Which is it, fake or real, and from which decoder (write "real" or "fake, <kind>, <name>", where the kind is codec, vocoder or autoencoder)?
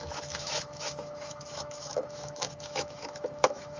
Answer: fake, autoencoder, DAC-VAE